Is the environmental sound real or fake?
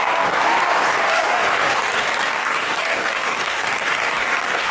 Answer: fake